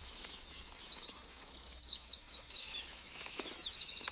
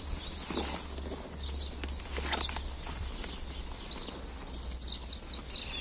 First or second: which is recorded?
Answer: second